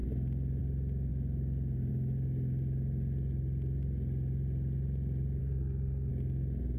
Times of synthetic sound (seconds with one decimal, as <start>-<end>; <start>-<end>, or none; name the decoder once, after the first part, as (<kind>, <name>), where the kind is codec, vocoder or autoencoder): 5.4-6.1 (codec, SNAC)